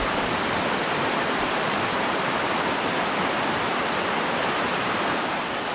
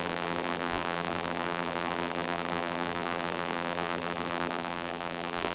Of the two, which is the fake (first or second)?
second